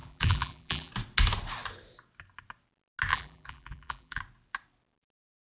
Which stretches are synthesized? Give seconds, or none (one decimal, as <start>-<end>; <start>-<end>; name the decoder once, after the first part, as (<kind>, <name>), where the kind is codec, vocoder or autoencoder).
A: 0.0-0.9 (vocoder, BigVGAN v2); 3.1-4.2